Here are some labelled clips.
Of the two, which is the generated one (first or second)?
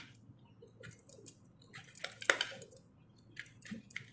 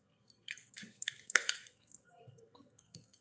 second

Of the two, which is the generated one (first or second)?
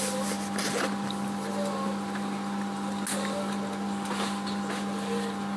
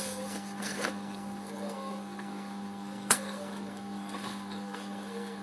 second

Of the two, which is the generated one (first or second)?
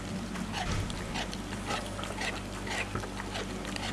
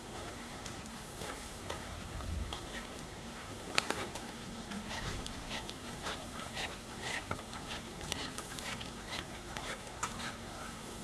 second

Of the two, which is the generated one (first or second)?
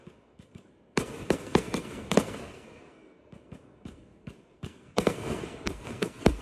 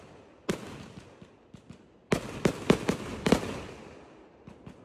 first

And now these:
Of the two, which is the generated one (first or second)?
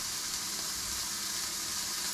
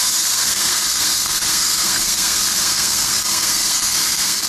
second